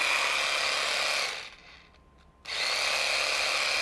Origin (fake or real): real